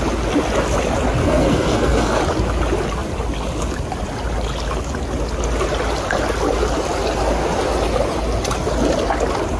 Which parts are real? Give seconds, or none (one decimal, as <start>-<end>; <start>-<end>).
0.0-1.2; 2.2-9.6